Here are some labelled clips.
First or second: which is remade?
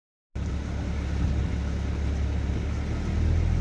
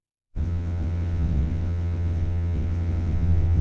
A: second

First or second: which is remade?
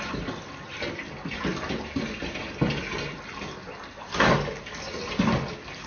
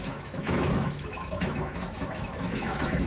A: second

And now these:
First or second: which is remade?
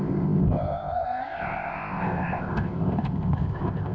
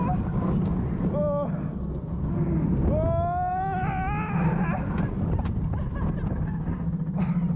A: first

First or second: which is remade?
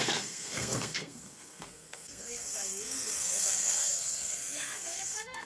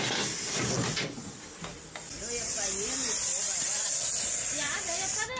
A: first